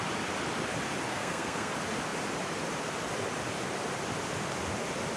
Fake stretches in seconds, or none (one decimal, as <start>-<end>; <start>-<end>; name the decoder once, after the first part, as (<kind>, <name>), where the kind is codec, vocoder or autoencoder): 1.1-1.7 (codec, SNAC)